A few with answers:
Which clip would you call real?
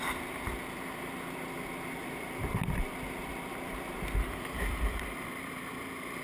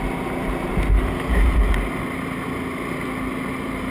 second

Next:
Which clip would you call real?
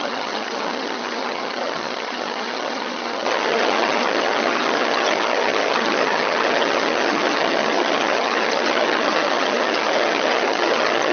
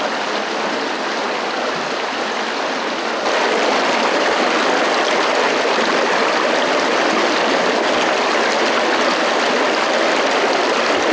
second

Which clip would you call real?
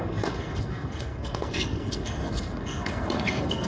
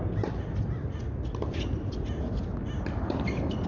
second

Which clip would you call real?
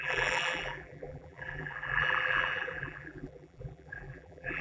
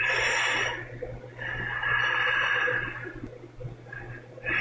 second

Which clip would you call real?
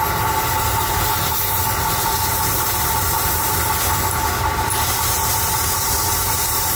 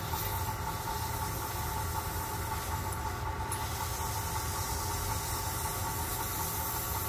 second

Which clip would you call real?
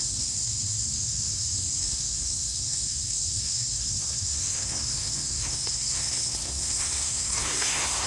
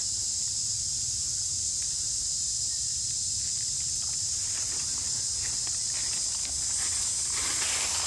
second